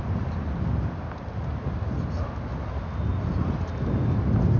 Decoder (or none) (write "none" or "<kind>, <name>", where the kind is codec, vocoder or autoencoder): none